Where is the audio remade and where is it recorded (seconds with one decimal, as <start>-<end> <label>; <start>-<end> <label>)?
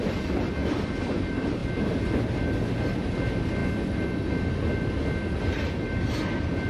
0.0-6.7 recorded